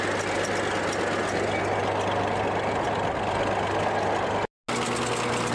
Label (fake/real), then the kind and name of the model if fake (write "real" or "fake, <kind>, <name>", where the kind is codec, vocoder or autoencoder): real